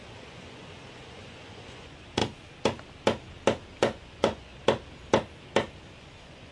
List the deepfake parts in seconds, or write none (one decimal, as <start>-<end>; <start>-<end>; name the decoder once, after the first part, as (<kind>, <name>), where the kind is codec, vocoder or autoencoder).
0.0-2.2 (vocoder, Vocos); 3.8-4.5; 6.0-6.5